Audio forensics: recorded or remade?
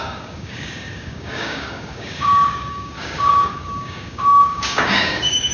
remade